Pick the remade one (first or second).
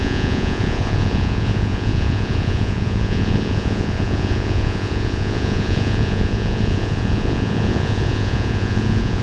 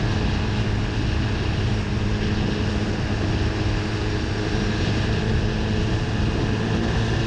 first